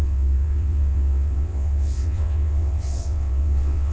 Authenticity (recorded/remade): remade